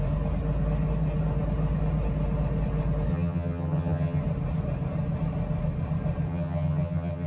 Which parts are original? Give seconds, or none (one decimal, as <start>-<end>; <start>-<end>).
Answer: 0.0-3.1; 4.2-6.3